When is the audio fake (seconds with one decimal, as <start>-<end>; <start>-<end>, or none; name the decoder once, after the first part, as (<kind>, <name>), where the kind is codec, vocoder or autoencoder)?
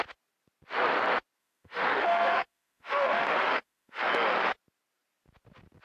1.4-4.0 (autoencoder, DAC-VAE)